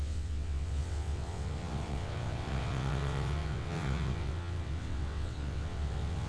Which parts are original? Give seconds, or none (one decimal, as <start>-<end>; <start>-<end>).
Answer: none